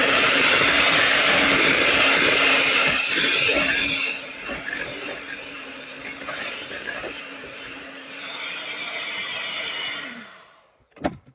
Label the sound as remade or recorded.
remade